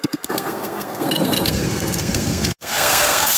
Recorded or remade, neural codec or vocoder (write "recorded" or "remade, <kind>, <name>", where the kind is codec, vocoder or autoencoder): remade, codec, SNAC